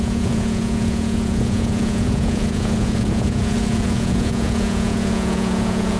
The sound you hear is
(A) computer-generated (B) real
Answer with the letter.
A